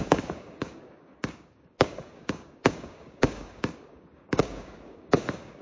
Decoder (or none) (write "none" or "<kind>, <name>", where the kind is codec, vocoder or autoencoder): codec, DAC